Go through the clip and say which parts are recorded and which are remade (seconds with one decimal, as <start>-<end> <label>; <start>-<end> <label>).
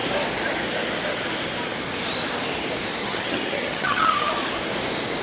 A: 0.0-3.0 recorded; 3.0-4.3 remade; 4.3-5.2 recorded